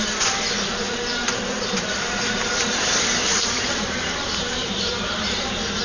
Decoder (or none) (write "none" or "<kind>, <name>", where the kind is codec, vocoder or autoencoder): vocoder, BigVGAN v2